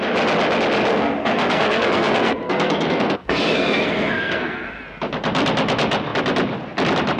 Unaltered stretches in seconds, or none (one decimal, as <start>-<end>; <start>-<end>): 0.0-0.9; 4.8-7.2